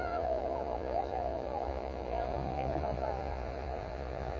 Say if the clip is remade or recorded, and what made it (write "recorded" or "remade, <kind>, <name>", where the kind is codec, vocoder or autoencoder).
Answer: remade, vocoder, Vocos